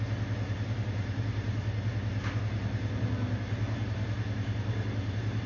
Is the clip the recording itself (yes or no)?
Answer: yes